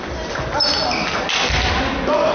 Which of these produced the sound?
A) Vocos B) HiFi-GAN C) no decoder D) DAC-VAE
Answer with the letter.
C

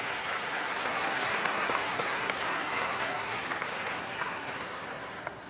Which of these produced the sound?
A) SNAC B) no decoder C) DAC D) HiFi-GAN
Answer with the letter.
A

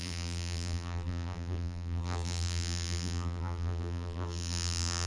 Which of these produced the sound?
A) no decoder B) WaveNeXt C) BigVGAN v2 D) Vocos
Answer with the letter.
C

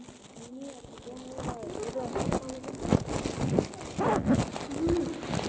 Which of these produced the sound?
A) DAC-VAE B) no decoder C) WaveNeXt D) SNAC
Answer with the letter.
B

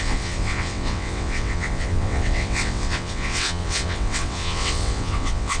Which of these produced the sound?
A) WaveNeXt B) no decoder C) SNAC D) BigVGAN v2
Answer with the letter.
A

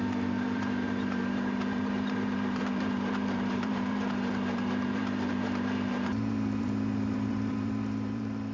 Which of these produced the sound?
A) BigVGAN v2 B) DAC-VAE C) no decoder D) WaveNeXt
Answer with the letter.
A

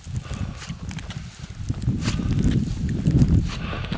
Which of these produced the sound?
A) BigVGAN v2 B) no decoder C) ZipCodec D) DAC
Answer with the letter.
B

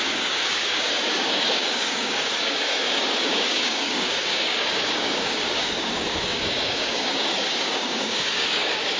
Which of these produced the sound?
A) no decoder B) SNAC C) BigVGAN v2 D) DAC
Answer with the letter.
D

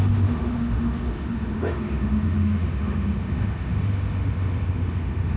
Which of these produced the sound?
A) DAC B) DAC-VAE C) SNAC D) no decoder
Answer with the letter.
B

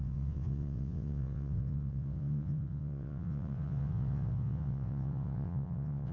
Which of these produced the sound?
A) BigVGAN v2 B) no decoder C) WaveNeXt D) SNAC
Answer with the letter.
C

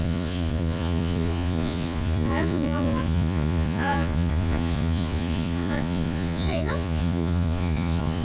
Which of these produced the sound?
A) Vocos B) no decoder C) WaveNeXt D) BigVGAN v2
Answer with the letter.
A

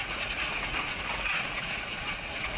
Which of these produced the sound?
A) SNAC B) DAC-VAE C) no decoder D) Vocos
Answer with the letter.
D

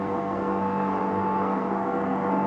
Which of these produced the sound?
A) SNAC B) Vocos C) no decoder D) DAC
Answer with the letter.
A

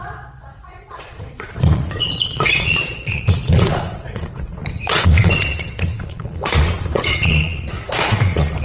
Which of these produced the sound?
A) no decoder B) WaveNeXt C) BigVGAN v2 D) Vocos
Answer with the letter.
D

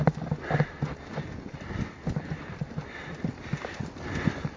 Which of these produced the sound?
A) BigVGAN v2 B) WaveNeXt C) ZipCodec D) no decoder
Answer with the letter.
D